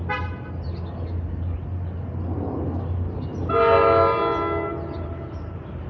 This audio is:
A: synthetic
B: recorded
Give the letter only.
B